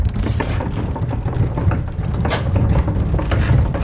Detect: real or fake real